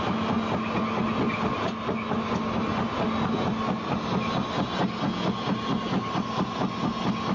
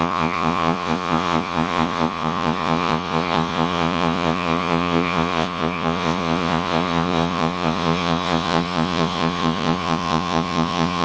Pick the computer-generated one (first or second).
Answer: second